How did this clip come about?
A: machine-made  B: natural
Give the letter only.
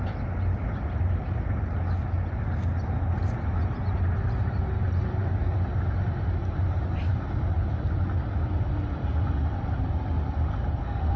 B